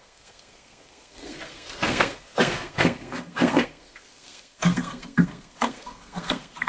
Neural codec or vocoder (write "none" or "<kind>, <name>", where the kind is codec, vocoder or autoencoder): codec, SNAC